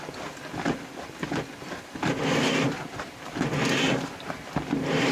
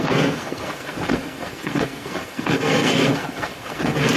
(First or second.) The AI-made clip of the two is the second